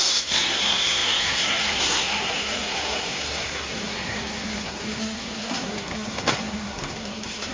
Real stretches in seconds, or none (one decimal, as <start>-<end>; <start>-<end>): none